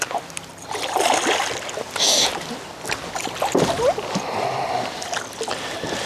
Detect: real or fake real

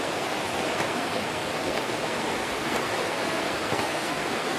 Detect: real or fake fake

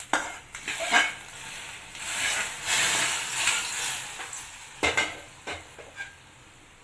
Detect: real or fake real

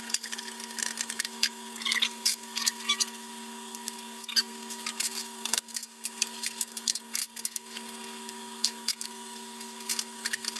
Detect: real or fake fake